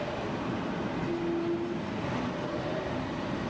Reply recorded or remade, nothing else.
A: recorded